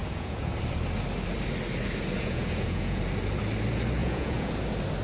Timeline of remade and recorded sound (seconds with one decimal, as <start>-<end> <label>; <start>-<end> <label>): 0.0-0.6 remade; 0.6-2.2 recorded; 2.2-3.0 remade; 3.0-4.0 recorded; 4.0-4.5 remade; 4.5-5.0 recorded

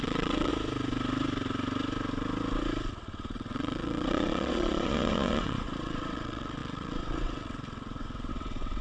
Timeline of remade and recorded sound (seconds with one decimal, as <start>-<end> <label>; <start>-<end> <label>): 0.0-0.5 remade; 0.5-2.9 recorded; 2.9-8.8 remade

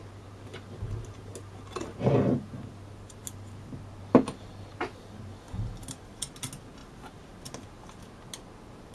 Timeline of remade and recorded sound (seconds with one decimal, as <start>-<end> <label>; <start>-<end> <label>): 0.0-8.9 recorded

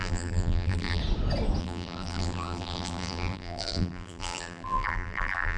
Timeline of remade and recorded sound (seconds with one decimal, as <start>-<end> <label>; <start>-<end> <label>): 0.0-1.0 remade; 1.0-1.6 recorded; 1.6-5.6 remade

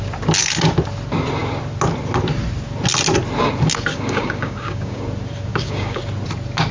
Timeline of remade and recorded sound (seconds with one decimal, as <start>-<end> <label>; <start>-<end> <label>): 0.0-3.9 recorded; 3.9-5.0 remade; 5.0-5.5 recorded; 5.5-6.0 remade; 6.0-6.7 recorded

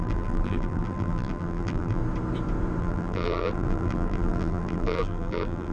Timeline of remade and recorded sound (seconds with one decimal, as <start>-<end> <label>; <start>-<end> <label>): 0.0-2.0 remade; 2.0-2.8 recorded; 2.8-5.7 remade